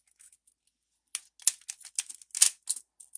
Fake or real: real